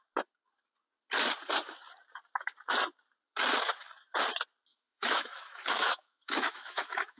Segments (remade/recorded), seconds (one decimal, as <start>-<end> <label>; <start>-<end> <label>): 0.0-4.7 recorded; 4.7-7.2 remade